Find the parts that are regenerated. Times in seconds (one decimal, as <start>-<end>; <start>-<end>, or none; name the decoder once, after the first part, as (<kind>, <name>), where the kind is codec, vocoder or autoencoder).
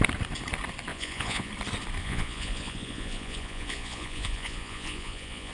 0.9-1.5 (vocoder, Vocos); 2.0-5.5